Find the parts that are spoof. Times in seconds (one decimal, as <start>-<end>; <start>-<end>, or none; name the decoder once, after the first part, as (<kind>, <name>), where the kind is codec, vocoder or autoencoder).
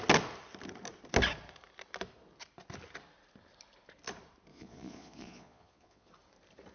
4.5-6.1 (vocoder, Vocos)